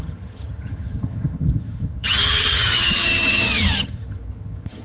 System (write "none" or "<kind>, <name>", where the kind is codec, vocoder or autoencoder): vocoder, HiFi-GAN